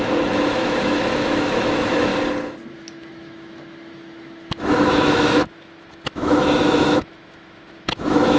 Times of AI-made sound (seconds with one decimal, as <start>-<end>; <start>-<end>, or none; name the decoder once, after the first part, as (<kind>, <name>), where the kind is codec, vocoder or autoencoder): 0.0-2.1 (autoencoder, DAC-VAE); 2.7-8.4